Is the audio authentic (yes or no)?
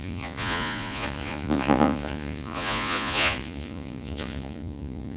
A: no